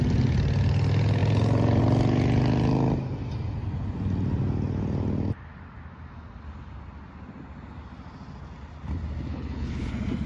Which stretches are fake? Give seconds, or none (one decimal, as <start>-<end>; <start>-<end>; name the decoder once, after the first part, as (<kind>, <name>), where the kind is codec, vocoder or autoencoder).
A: 9.3-9.9 (codec, HILCodec)